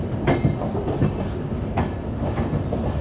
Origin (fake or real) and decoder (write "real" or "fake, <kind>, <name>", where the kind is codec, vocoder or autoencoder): real